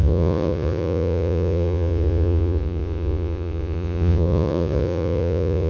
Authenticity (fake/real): fake